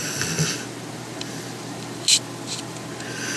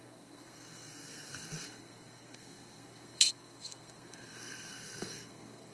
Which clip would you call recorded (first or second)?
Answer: first